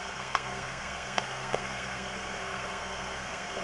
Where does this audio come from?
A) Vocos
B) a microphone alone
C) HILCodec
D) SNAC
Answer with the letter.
D